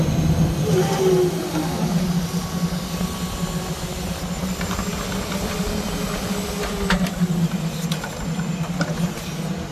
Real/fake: real